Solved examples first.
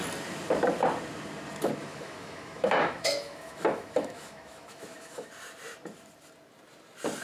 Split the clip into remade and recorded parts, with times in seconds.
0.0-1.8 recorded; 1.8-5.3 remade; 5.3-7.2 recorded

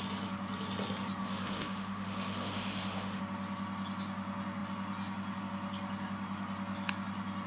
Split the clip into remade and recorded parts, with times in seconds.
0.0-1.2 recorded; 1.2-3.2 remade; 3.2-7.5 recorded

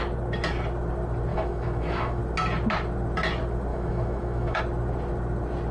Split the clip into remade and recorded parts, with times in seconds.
0.0-1.3 recorded; 1.3-2.2 remade; 2.2-3.7 recorded; 3.7-4.6 remade; 4.6-5.7 recorded

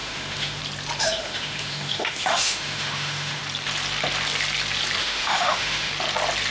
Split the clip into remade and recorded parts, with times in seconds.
0.0-0.6 remade; 0.6-1.0 recorded; 1.0-3.4 remade; 3.4-5.0 recorded; 5.0-5.9 remade; 5.9-6.5 recorded

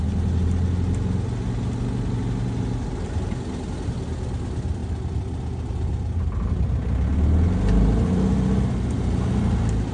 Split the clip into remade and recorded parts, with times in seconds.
0.0-9.9 recorded

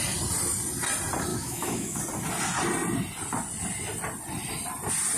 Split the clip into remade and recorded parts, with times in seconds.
0.0-1.3 recorded; 1.3-2.0 remade; 2.0-5.2 recorded

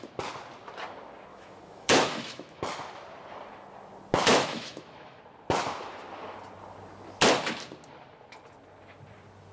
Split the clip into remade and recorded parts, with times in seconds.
0.0-1.3 recorded; 1.3-2.6 remade; 2.6-4.3 recorded; 4.3-5.2 remade; 5.2-9.5 recorded

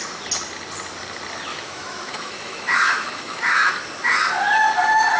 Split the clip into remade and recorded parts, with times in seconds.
0.0-1.5 recorded; 1.5-3.7 remade; 3.7-5.2 recorded